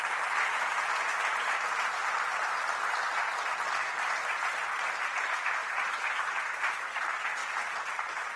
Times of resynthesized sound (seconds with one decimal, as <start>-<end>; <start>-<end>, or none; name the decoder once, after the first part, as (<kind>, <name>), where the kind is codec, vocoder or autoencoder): 0.0-2.0 (vocoder, BigVGAN v2); 4.2-7.4; 7.9-8.4